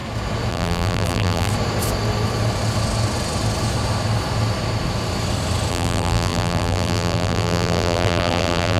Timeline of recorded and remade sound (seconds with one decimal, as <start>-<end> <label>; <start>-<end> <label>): 0.0-0.5 recorded; 0.5-1.5 remade; 1.5-5.7 recorded; 5.7-8.8 remade

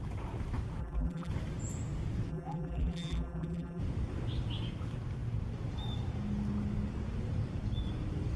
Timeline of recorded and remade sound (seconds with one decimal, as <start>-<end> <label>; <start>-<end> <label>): 0.0-0.8 recorded; 0.8-1.3 remade; 1.3-2.3 recorded; 2.3-3.8 remade; 3.8-8.4 recorded

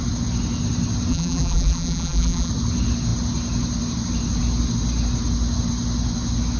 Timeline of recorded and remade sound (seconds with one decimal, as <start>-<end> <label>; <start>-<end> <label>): 0.0-1.1 recorded; 1.1-2.5 remade; 2.5-6.6 recorded

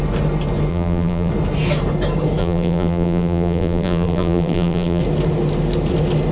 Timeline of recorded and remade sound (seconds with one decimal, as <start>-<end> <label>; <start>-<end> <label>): 0.0-0.7 recorded; 0.7-1.3 remade; 1.3-2.4 recorded; 2.4-5.0 remade; 5.0-6.3 recorded

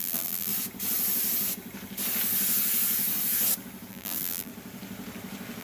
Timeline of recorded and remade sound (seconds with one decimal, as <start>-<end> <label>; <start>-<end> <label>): 0.0-0.5 remade; 0.5-3.9 recorded; 3.9-4.5 remade; 4.5-5.6 recorded

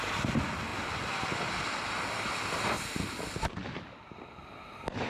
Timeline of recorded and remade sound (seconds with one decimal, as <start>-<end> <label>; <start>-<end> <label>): 0.0-5.1 recorded

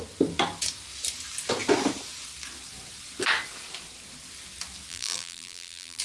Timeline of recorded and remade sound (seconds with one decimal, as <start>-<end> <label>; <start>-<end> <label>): 0.0-4.9 recorded; 4.9-6.0 remade